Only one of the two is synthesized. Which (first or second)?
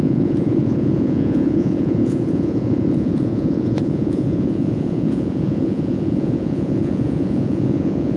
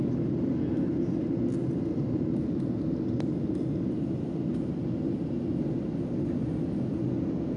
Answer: first